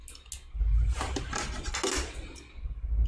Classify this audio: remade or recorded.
recorded